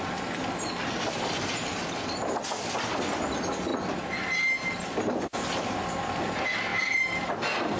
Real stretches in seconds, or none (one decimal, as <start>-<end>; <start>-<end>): 0.0-7.8